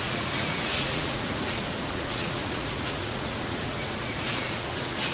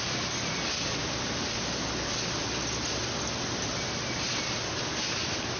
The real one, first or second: second